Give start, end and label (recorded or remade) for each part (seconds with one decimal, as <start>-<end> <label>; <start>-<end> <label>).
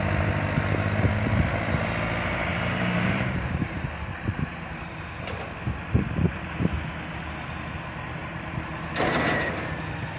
0.0-2.5 recorded; 2.5-5.0 remade; 5.0-8.2 recorded; 8.2-8.9 remade; 8.9-10.2 recorded